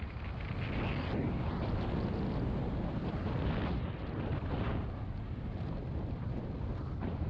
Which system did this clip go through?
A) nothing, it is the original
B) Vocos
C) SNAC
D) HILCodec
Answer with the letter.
A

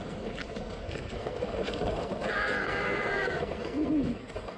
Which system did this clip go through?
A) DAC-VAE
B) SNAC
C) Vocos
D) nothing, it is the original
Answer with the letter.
B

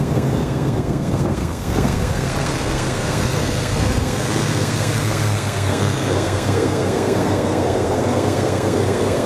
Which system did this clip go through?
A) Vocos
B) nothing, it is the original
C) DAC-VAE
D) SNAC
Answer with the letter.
D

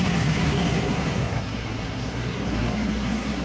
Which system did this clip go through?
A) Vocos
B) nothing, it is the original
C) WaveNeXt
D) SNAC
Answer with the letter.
D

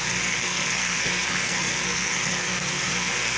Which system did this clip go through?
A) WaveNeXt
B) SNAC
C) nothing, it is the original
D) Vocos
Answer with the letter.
B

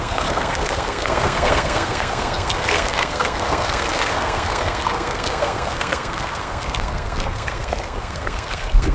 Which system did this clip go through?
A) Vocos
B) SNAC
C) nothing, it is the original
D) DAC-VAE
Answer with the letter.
B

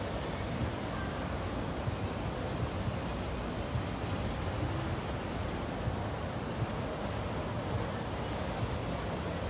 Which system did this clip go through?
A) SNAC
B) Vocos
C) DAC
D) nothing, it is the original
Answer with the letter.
D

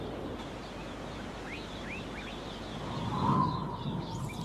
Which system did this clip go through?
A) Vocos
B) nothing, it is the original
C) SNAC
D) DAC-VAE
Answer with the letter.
B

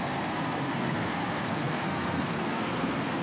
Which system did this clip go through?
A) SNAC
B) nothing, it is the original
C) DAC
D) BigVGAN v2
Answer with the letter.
A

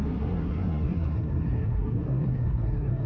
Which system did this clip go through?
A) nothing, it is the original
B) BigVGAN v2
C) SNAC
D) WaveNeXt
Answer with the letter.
C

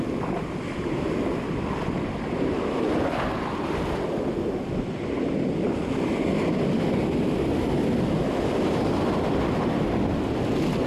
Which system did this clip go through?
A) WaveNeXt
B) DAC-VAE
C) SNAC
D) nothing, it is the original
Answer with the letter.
D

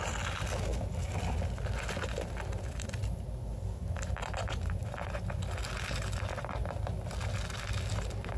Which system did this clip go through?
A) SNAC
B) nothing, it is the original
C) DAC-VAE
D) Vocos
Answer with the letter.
B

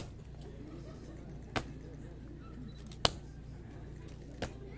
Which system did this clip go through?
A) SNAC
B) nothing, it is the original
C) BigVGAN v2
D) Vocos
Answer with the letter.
B